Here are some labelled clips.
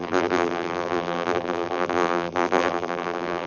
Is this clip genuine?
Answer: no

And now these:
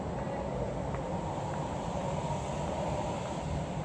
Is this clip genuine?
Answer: yes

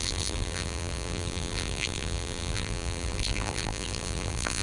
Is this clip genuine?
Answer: no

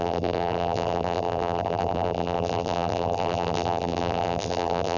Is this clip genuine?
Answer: no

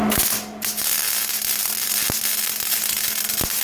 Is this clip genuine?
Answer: yes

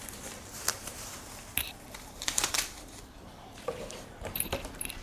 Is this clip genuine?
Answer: no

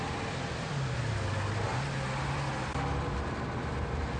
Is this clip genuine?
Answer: yes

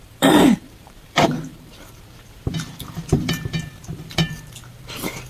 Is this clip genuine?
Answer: no